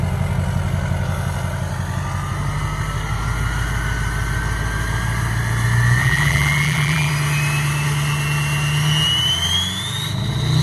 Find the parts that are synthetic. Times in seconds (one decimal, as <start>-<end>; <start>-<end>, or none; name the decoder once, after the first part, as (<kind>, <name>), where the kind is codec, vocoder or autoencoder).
6.0-7.1 (vocoder, BigVGAN v2)